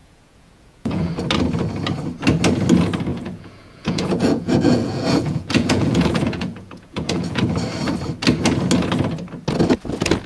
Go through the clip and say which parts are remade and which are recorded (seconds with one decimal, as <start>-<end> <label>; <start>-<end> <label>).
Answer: 0.0-1.1 remade; 1.1-3.1 recorded; 3.1-7.4 remade; 7.4-10.3 recorded